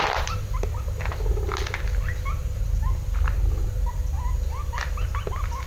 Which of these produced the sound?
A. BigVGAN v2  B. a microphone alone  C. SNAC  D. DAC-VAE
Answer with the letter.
B